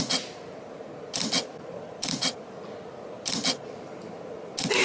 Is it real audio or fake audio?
real